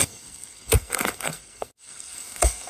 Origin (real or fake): fake